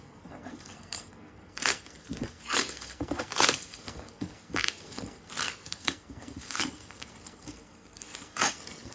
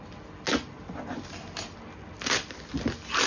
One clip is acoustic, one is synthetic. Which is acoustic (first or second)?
second